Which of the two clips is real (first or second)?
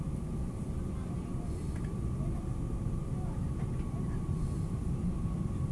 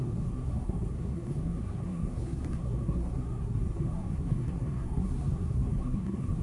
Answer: first